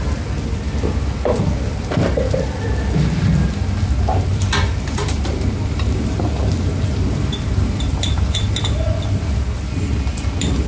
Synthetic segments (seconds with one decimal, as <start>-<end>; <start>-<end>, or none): 4.3-8.6